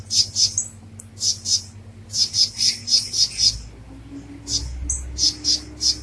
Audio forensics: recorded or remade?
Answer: recorded